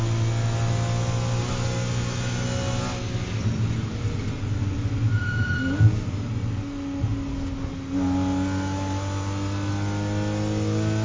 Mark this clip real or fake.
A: real